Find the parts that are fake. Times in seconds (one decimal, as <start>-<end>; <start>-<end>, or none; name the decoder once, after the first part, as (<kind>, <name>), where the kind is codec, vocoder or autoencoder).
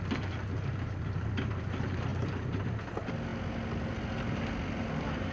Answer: none